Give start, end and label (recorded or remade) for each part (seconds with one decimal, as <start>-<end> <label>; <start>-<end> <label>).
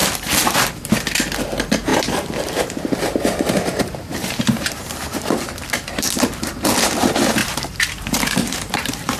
0.0-1.9 recorded; 1.9-4.9 remade; 4.9-7.4 recorded; 7.4-9.2 remade